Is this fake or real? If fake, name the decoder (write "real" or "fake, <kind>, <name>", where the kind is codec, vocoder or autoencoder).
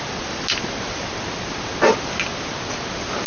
real